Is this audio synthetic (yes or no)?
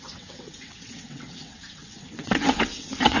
yes